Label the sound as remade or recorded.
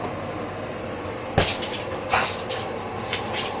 remade